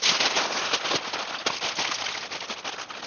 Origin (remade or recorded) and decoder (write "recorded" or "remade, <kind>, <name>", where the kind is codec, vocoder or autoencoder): recorded